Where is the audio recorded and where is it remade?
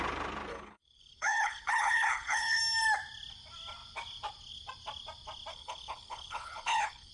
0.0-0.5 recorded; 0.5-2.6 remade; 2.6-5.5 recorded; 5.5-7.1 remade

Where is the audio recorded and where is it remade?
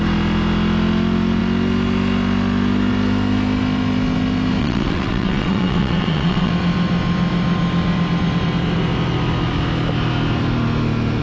0.0-4.6 recorded; 4.6-6.5 remade; 6.5-11.2 recorded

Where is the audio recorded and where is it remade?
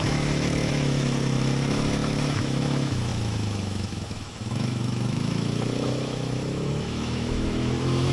0.0-8.1 remade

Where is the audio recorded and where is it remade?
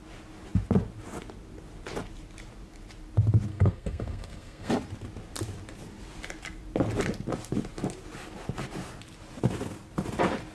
0.0-3.5 recorded; 3.5-4.7 remade; 4.7-10.5 recorded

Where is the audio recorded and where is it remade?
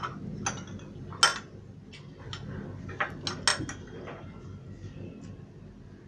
0.0-6.1 recorded